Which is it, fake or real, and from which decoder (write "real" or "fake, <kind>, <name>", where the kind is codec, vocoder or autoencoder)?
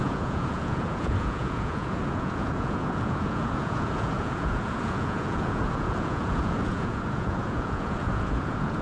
fake, vocoder, Vocos